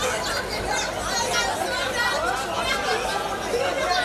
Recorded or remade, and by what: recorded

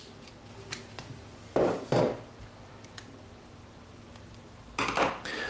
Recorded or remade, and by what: remade, vocoder, BigVGAN v2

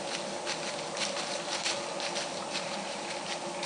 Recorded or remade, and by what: recorded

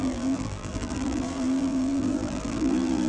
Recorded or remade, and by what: remade, vocoder, BigVGAN v2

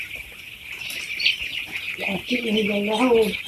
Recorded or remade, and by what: recorded